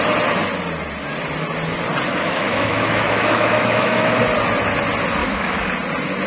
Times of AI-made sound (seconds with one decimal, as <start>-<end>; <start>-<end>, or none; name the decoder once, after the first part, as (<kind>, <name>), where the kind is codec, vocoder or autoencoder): 2.1-4.2 (autoencoder, DAC-VAE); 5.2-5.7